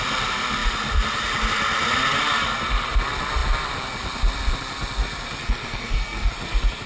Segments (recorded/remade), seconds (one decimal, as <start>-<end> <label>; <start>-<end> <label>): 0.0-5.4 recorded; 5.4-6.3 remade; 6.3-6.9 recorded